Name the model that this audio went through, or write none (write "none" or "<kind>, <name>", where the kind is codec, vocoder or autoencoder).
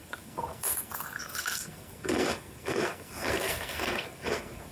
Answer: codec, SNAC